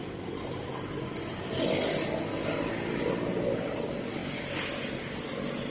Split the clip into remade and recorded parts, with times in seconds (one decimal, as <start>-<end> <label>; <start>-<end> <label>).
0.0-5.7 recorded